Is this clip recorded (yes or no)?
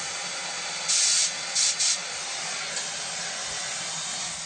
yes